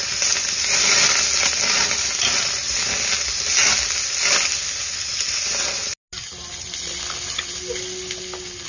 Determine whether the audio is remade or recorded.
recorded